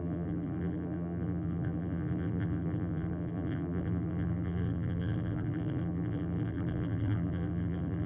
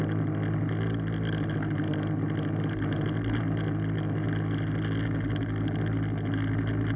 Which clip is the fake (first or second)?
first